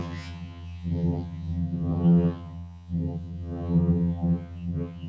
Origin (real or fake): fake